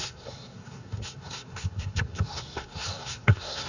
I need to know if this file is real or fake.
fake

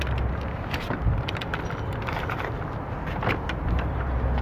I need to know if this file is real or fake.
real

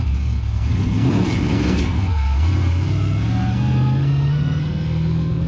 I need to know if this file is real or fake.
fake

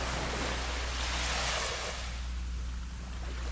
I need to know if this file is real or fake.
real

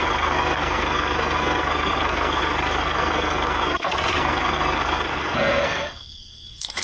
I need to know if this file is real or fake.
fake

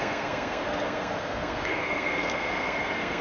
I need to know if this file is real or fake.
fake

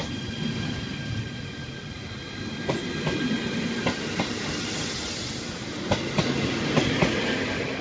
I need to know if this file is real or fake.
real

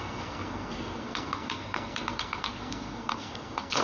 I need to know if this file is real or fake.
fake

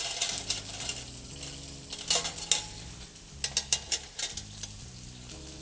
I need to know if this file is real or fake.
real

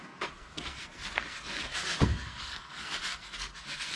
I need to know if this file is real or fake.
fake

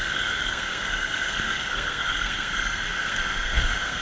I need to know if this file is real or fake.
fake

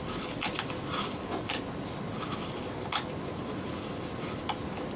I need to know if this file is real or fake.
real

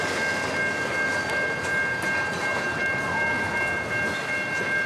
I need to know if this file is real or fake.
real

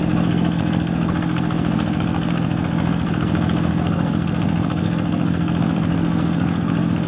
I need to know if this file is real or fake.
fake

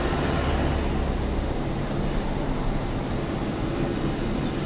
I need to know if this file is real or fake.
real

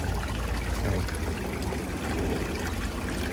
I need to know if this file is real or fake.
real